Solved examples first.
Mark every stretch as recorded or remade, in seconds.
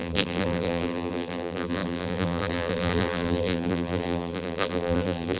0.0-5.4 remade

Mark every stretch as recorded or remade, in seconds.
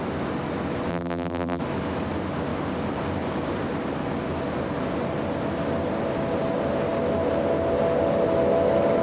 0.0-0.9 recorded; 0.9-1.6 remade; 1.6-9.0 recorded